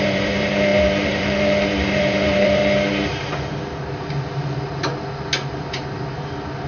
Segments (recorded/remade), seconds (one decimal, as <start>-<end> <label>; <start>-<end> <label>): 0.0-2.6 remade; 2.6-6.7 recorded